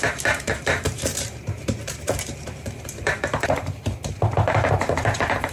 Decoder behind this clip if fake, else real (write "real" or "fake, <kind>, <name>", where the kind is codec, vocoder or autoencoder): fake, vocoder, BigVGAN v2